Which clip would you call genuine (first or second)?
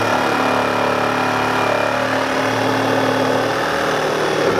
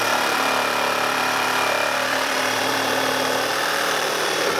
first